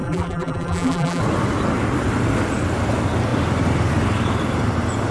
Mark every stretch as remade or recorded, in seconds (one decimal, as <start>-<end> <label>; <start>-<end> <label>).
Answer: 0.0-1.2 remade; 1.2-5.1 recorded